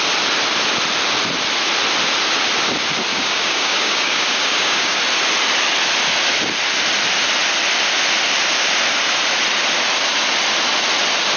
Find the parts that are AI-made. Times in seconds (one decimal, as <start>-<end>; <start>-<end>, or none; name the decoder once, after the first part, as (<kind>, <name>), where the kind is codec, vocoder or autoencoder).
3.1-5.0 (codec, DAC)